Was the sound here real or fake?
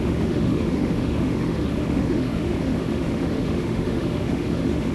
fake